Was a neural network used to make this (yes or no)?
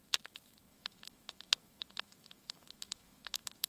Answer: yes